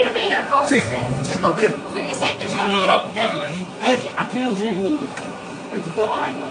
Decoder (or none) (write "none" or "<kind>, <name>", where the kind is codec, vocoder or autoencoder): codec, SNAC